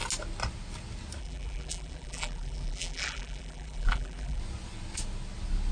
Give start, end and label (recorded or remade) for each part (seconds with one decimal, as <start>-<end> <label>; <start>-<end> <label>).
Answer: 0.0-1.2 recorded; 1.2-4.4 remade; 4.4-5.7 recorded